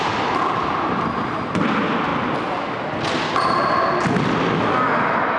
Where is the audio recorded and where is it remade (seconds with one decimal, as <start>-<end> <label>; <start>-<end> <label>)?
0.0-5.4 recorded